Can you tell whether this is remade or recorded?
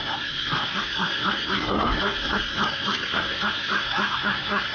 remade